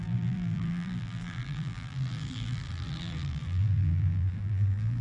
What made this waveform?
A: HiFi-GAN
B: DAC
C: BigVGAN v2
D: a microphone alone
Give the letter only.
C